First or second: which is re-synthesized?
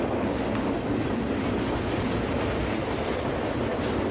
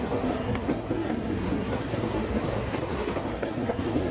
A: second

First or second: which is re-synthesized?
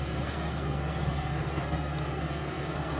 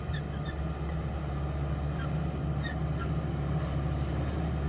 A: first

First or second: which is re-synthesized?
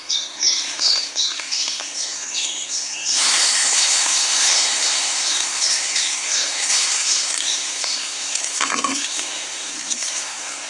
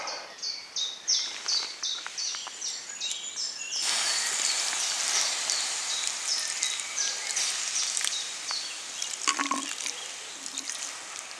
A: first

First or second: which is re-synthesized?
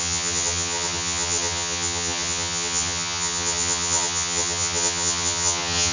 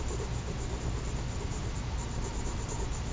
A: first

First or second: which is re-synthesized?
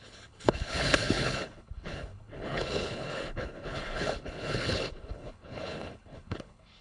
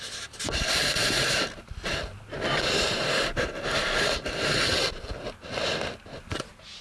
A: first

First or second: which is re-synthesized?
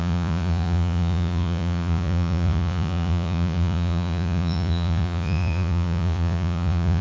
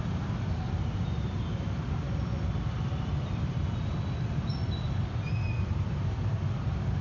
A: first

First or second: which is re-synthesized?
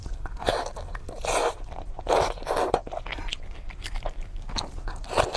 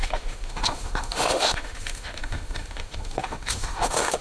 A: second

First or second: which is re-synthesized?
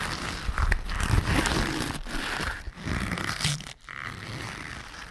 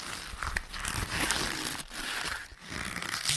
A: first